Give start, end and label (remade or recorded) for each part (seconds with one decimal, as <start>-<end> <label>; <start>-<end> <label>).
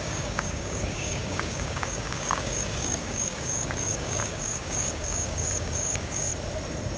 0.0-6.3 remade; 6.3-7.0 recorded